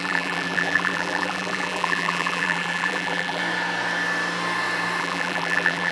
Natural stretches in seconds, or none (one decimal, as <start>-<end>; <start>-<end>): 3.4-5.0